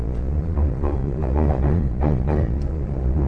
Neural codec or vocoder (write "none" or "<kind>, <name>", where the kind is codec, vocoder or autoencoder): vocoder, Vocos